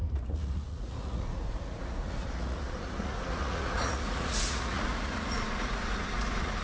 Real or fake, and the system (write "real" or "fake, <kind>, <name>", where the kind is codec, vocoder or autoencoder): fake, vocoder, Vocos